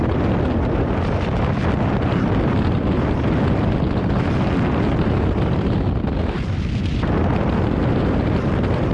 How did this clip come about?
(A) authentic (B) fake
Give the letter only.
A